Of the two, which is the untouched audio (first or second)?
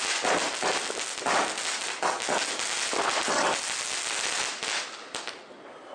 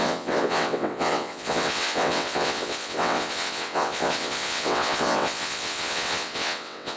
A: first